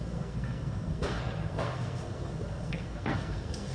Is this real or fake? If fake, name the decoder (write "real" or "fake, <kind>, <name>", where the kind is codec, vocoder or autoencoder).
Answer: fake, codec, SNAC